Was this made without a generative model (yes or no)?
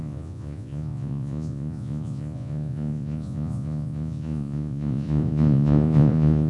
no